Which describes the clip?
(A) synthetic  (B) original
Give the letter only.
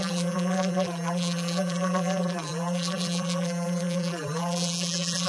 A